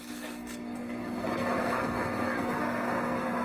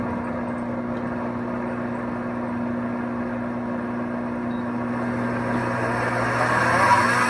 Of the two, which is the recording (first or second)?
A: second